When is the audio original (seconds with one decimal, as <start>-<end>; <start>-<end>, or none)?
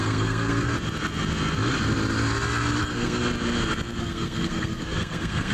0.7-2.8; 3.2-4.0